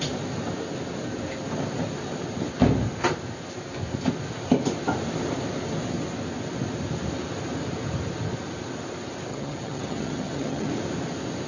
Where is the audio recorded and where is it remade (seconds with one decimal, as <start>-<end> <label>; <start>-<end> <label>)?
0.0-9.3 recorded; 9.3-10.7 remade; 10.7-11.5 recorded